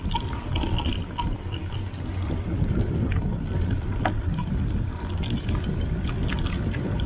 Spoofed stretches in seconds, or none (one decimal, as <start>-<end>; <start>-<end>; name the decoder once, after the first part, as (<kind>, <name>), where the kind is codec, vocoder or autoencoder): none